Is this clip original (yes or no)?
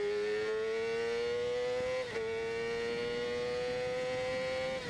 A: yes